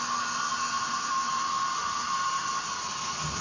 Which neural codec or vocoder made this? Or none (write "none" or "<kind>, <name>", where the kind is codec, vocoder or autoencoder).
none